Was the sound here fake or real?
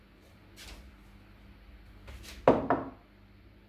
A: real